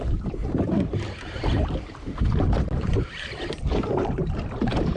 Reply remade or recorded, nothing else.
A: remade